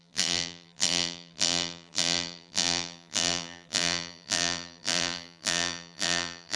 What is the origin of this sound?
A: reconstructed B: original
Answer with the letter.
A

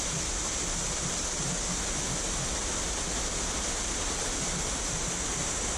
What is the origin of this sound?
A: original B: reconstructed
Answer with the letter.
A